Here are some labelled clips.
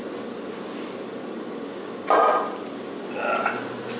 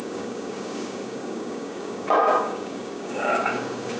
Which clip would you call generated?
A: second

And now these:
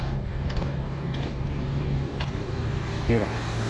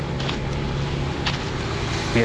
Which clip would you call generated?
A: first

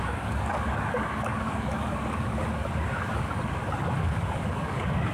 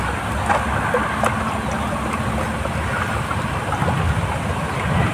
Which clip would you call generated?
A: first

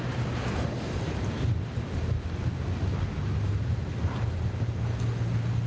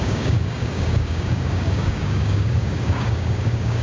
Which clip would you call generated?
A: second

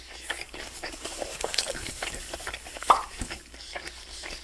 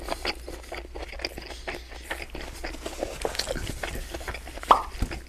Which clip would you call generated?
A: first